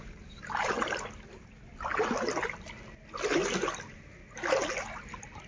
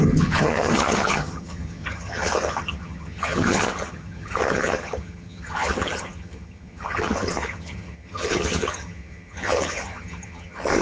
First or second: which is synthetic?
second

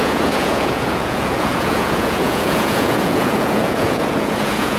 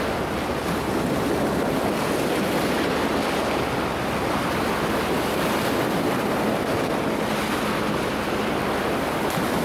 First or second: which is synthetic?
first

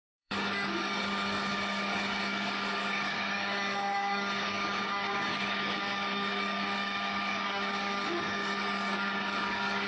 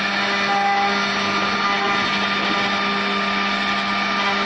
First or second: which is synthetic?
first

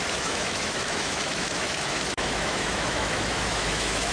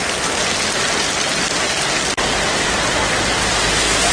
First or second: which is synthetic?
first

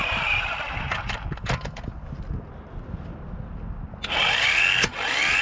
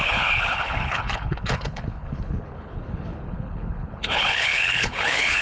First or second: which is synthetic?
second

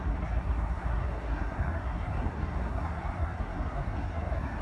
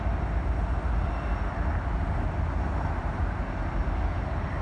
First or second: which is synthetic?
first